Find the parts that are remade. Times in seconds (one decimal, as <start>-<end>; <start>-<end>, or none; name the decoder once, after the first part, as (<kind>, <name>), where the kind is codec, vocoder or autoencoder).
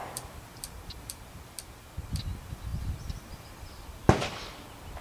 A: 0.0-1.3 (vocoder, BigVGAN v2)